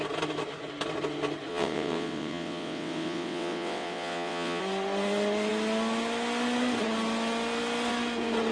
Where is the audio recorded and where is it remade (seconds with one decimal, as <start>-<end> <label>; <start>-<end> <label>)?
0.0-1.5 recorded; 1.5-4.6 remade; 4.6-8.5 recorded